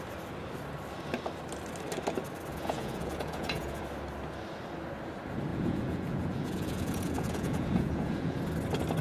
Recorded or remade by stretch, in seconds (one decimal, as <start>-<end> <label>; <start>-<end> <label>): 0.0-2.5 recorded; 2.5-3.8 remade; 3.8-5.5 recorded; 5.5-8.4 remade; 8.4-9.0 recorded